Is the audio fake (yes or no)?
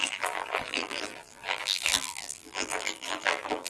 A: yes